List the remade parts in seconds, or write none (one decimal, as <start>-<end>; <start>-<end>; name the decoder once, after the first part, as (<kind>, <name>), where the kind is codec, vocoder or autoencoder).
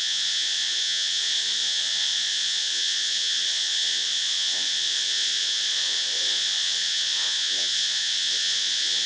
0.0-9.1 (vocoder, Vocos)